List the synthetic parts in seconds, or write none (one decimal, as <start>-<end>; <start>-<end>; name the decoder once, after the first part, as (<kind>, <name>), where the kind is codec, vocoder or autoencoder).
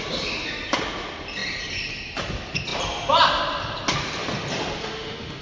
4.8-5.4 (autoencoder, DAC-VAE)